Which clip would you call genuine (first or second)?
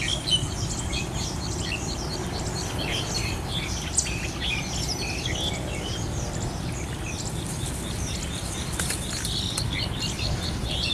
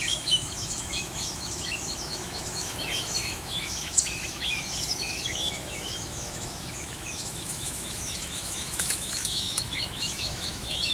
first